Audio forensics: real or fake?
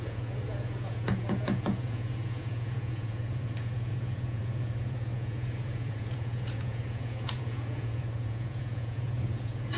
fake